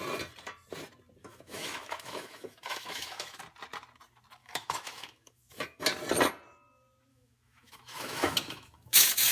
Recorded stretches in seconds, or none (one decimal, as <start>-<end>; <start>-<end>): 0.0-1.2; 3.4-4.4; 5.8-7.1